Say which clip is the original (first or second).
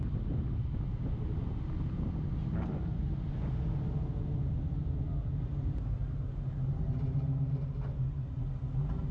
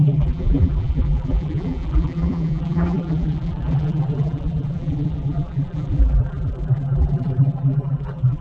first